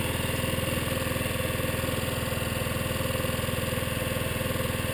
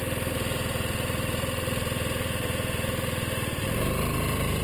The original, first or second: first